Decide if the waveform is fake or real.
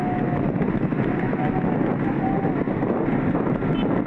real